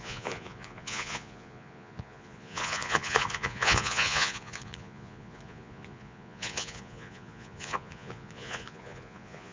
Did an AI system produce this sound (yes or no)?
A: yes